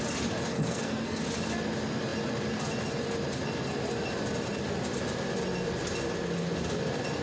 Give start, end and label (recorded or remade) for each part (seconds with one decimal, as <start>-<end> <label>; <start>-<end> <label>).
0.0-0.5 recorded; 0.5-1.2 remade; 1.2-7.2 recorded